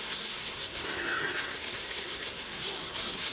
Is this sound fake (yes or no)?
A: yes